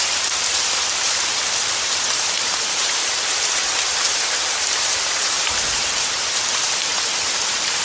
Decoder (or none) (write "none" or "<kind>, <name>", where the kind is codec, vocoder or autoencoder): vocoder, BigVGAN v2